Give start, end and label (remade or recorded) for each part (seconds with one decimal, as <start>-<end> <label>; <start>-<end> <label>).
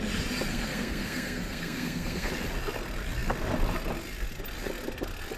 0.0-0.5 recorded; 0.5-2.3 remade; 2.3-5.4 recorded